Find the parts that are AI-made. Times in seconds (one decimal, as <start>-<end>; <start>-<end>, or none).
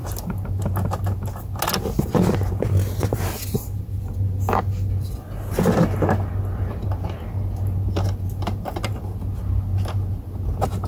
none